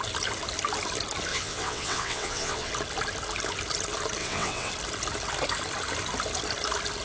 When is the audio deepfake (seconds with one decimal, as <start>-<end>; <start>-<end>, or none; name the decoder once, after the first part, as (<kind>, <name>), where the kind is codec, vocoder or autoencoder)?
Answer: 1.3-2.7 (vocoder, WaveNeXt); 4.2-4.7